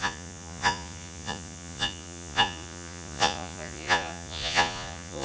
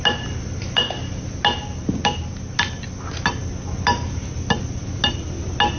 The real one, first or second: second